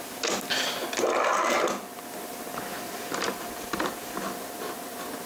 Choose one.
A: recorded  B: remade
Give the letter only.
A